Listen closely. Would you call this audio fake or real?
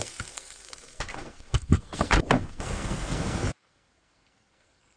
fake